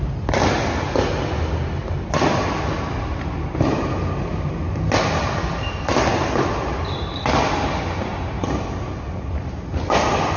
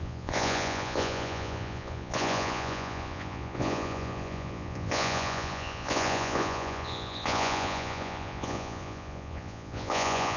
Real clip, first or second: first